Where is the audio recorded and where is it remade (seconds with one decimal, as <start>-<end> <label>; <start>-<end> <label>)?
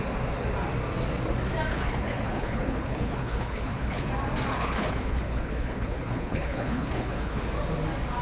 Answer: 0.0-1.7 recorded; 1.7-4.1 remade; 4.1-4.5 recorded; 4.5-7.4 remade; 7.4-8.2 recorded